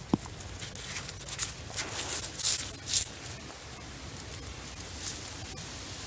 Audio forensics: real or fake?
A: real